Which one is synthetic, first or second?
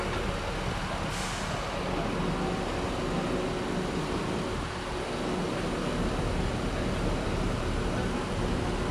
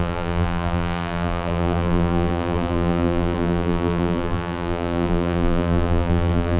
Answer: second